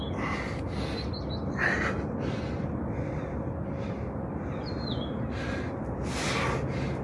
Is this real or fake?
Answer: real